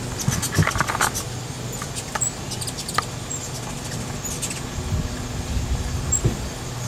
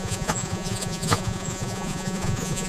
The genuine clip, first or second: first